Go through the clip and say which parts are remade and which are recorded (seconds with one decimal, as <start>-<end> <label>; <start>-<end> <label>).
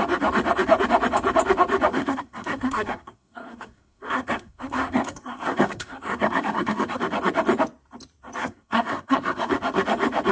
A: 0.0-1.9 recorded; 1.9-7.0 remade; 7.0-8.4 recorded; 8.4-9.5 remade; 9.5-10.3 recorded